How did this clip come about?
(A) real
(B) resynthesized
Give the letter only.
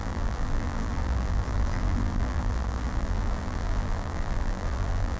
B